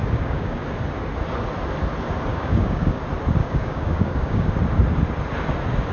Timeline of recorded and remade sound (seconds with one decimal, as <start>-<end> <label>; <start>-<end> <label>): 0.0-0.6 remade; 0.6-2.3 recorded; 2.3-3.0 remade; 3.0-3.4 recorded; 3.4-4.5 remade; 4.5-5.9 recorded